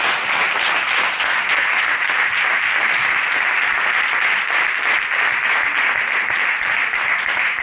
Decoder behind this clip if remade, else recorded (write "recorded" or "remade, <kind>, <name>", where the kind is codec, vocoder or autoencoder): recorded